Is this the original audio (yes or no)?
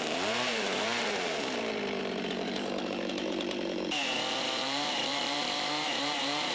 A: no